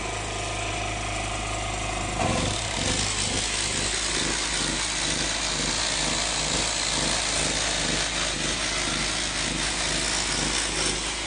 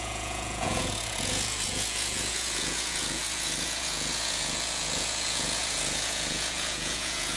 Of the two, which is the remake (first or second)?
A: second